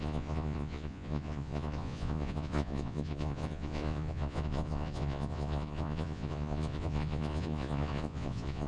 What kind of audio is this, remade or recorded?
remade